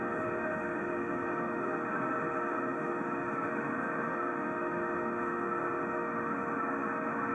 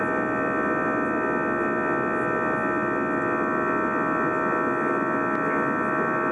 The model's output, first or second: first